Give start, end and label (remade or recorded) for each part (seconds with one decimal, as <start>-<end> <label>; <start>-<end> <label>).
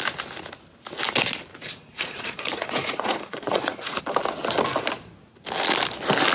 0.0-1.5 recorded; 1.5-4.0 remade; 4.0-6.3 recorded